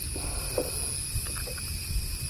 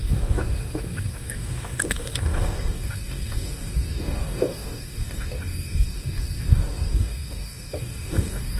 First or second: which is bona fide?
first